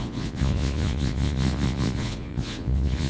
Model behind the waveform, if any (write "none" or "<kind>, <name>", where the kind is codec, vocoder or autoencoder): vocoder, Vocos